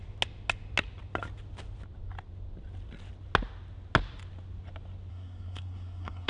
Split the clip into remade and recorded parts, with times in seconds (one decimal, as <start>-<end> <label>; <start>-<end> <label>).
0.0-5.1 recorded; 5.1-6.3 remade